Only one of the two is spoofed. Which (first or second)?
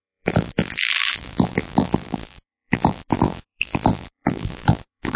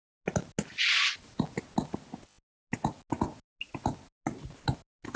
first